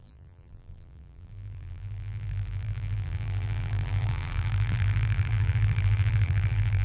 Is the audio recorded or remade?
remade